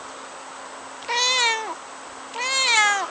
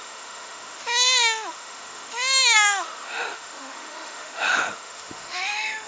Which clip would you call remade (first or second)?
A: second